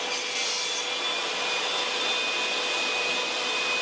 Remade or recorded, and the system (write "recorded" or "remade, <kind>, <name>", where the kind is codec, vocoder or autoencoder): recorded